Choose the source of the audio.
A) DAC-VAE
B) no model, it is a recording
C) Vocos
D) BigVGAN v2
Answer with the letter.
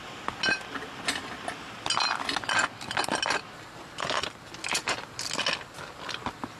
B